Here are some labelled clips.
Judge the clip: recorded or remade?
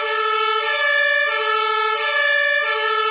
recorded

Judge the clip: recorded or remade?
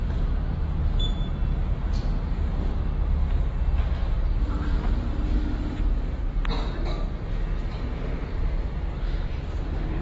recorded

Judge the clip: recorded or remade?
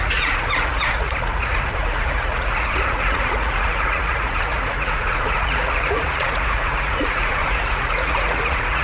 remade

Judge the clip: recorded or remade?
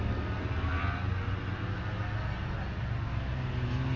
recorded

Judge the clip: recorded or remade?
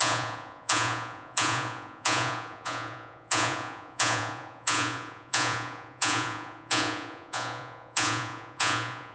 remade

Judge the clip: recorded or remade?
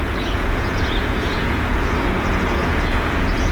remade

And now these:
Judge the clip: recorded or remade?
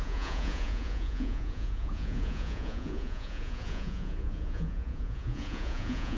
remade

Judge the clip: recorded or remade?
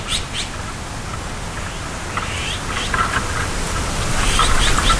recorded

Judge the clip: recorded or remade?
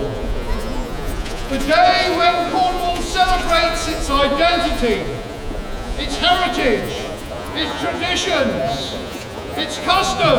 remade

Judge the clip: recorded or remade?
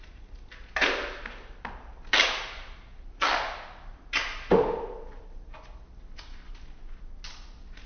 recorded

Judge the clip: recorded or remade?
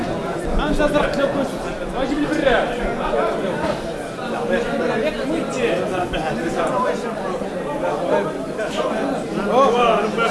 recorded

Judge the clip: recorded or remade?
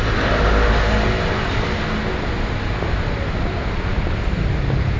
recorded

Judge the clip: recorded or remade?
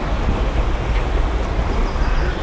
recorded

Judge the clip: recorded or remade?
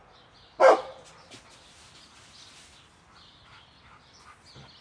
recorded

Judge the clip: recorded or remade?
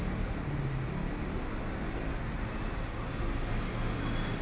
recorded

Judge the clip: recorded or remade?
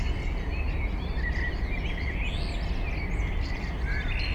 recorded